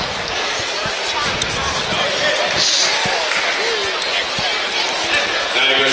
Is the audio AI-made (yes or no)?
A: no